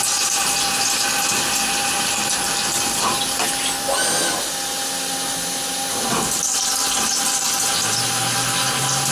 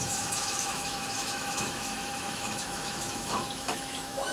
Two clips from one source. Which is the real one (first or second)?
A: first